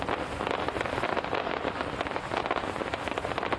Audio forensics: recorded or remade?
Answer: recorded